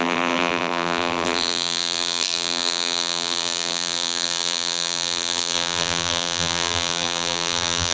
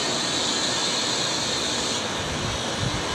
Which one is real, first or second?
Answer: second